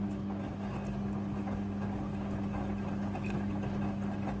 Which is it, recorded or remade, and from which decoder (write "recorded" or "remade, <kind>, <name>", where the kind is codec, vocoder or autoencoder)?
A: recorded